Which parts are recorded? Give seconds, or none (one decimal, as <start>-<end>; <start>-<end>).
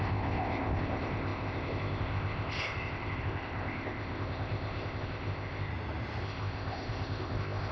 5.7-6.2